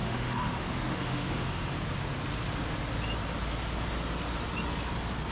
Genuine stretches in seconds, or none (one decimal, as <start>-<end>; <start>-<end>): 1.7-5.3